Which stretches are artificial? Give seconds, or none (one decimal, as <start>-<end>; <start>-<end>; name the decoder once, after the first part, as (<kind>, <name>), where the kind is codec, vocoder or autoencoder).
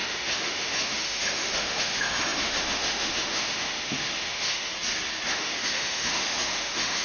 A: 0.0-4.7 (autoencoder, DAC-VAE); 5.3-7.0